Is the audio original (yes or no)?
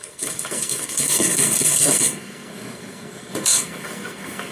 no